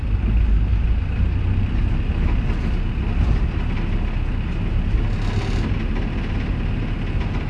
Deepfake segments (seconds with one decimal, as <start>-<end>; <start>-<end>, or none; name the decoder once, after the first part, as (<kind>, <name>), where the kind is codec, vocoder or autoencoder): none

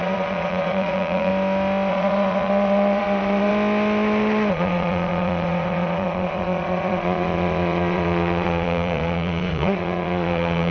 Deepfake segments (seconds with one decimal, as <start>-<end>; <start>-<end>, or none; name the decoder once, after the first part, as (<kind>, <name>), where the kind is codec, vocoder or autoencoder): 0.0-1.3 (vocoder, Vocos); 1.9-3.5; 4.5-10.7

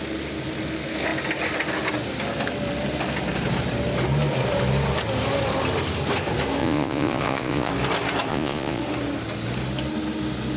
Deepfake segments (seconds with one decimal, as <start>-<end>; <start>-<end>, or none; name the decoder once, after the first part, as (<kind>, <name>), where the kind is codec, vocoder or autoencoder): 6.6-7.7 (vocoder, Vocos); 8.3-8.8

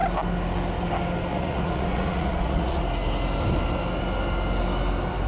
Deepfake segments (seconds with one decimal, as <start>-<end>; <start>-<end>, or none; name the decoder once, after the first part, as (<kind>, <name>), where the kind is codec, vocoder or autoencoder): 1.3-2.8 (vocoder, Vocos)

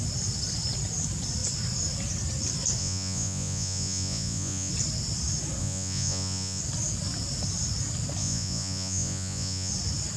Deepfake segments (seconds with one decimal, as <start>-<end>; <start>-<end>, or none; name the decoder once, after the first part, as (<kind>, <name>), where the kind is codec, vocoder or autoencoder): 2.8-4.7 (vocoder, Vocos); 5.6-6.6; 8.2-9.7